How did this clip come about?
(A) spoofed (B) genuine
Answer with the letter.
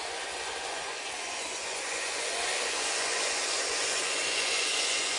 A